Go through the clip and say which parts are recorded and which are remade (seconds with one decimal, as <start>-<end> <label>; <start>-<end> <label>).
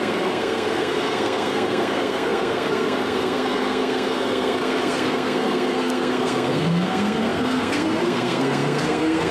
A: 0.0-9.3 remade